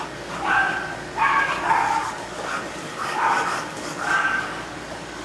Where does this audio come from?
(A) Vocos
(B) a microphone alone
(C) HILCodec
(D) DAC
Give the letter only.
D